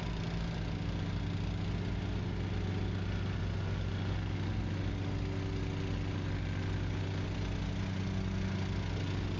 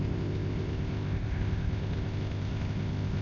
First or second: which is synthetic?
second